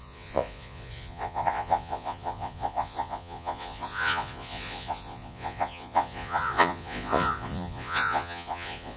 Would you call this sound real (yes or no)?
no